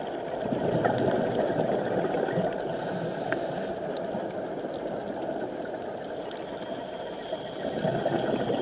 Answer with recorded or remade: recorded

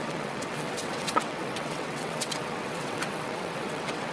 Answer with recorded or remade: remade